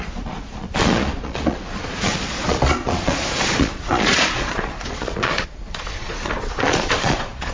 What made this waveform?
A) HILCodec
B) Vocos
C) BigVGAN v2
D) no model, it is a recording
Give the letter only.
B